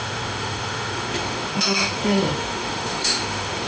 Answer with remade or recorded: remade